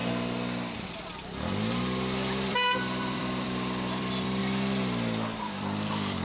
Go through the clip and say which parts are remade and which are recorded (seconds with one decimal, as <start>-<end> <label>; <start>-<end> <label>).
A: 0.0-0.8 recorded; 0.8-4.4 remade; 4.4-5.4 recorded; 5.4-6.2 remade